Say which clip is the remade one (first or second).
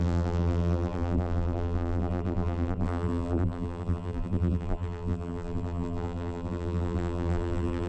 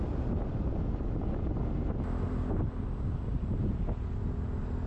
first